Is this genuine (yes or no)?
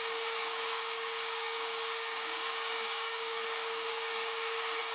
no